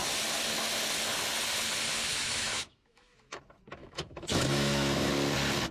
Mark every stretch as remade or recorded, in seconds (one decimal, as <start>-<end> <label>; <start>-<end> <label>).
0.0-2.1 recorded; 2.1-3.4 remade; 3.4-3.8 recorded; 3.8-5.1 remade; 5.1-5.7 recorded